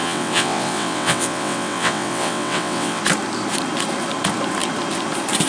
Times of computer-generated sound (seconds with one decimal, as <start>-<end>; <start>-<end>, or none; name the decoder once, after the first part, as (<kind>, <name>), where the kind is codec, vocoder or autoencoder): 0.0-3.0 (vocoder, WaveNeXt)